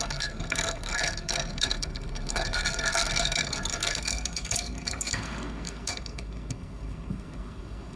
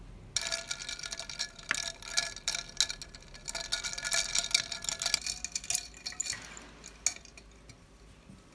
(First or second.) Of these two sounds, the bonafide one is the second